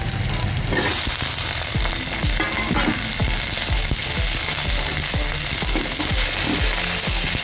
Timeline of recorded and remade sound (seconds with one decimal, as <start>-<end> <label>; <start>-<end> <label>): 0.0-7.4 recorded